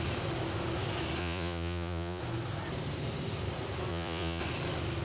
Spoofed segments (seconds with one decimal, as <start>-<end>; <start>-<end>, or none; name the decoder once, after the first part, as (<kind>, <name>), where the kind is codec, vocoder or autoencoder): 1.2-2.2 (vocoder, Vocos); 3.9-4.4